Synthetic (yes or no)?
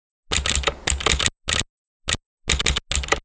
no